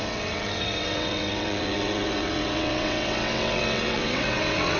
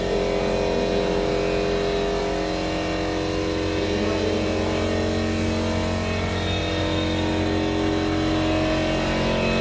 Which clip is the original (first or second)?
second